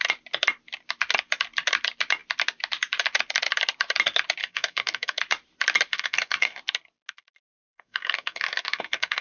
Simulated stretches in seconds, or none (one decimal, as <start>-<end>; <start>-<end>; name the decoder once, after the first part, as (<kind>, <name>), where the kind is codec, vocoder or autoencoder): 4.4-5.2 (codec, SNAC); 5.9-6.6; 7.5-9.2